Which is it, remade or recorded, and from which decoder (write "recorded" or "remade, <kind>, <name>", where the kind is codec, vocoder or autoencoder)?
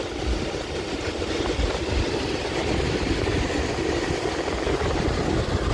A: remade, vocoder, BigVGAN v2